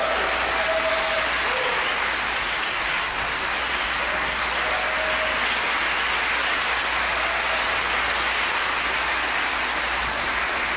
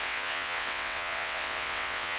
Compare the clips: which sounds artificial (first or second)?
second